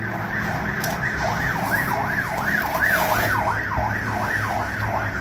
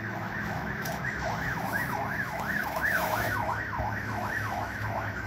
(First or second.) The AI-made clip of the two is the second